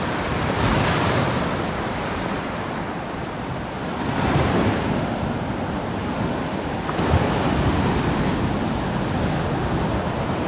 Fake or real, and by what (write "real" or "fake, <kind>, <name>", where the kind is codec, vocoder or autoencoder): real